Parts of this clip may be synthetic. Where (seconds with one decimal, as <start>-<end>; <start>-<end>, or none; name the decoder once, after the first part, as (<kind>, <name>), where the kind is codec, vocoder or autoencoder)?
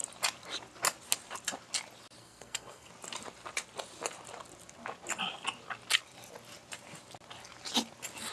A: 2.2-2.9 (codec, SNAC)